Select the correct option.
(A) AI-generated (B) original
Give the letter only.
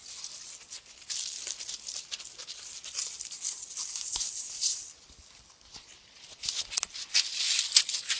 B